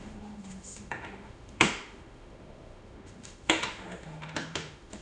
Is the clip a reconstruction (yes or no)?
yes